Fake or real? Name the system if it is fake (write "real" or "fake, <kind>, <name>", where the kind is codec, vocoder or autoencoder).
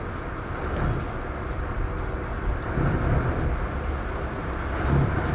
real